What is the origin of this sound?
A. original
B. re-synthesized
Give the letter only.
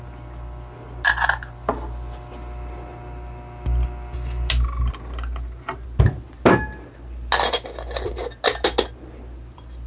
A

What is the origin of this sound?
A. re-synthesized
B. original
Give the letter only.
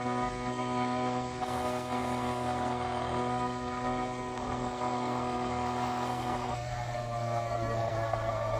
A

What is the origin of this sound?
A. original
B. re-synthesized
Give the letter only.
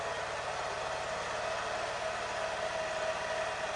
A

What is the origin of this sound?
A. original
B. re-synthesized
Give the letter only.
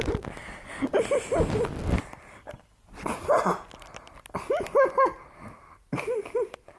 A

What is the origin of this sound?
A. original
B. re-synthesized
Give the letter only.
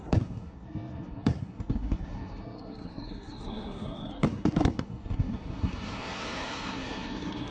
B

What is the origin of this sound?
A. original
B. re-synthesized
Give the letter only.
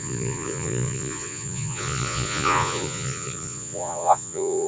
B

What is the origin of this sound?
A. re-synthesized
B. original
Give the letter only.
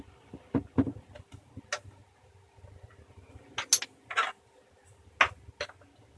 B